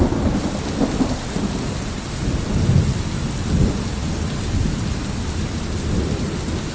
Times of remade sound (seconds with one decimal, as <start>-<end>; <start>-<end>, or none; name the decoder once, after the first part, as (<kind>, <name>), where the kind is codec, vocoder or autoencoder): none